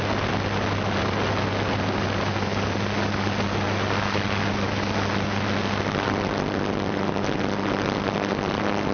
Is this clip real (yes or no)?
yes